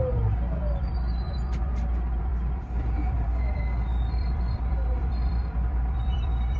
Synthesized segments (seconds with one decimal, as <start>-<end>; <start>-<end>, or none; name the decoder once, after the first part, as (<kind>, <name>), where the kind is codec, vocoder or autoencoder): 2.3-3.4 (vocoder, BigVGAN v2); 3.9-6.6